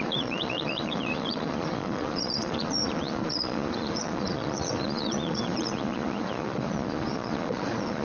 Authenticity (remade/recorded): remade